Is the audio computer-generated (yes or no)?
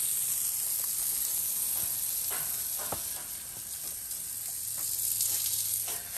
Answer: no